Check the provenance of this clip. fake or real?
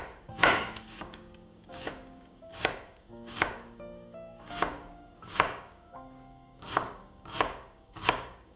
fake